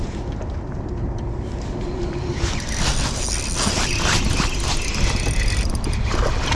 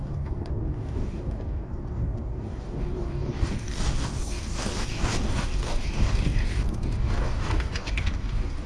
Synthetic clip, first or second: second